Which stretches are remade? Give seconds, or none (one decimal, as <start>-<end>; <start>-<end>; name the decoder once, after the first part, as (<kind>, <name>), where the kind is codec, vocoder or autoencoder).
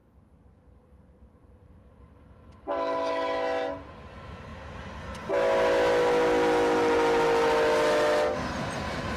0.0-3.1 (vocoder, BigVGAN v2)